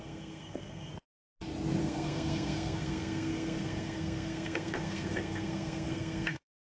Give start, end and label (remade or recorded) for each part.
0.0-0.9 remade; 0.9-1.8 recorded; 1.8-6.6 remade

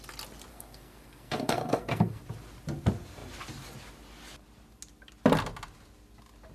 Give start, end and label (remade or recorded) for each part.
0.0-0.5 recorded; 0.5-2.2 remade; 2.2-6.5 recorded

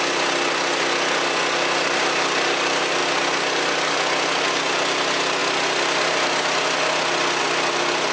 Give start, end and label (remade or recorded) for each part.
0.0-8.1 recorded

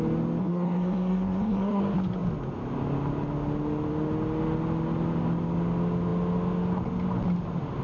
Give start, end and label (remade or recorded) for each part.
0.0-0.4 recorded; 0.4-1.8 remade; 1.8-7.8 recorded

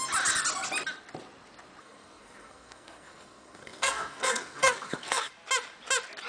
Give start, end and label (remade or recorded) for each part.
0.0-1.8 recorded; 1.8-5.3 remade; 5.3-6.3 recorded

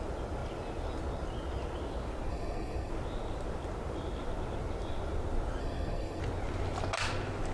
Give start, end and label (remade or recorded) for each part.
0.0-2.3 recorded; 2.3-2.9 remade; 2.9-5.6 recorded; 5.6-6.2 remade; 6.2-7.5 recorded

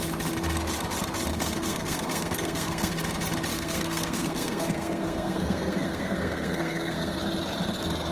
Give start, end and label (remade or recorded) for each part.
0.0-1.3 recorded; 1.3-2.9 remade; 2.9-3.5 recorded; 3.5-7.2 remade; 7.2-8.1 recorded